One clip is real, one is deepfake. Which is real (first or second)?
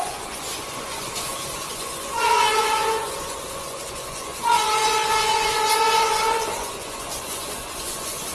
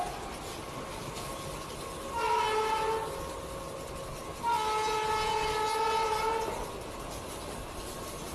second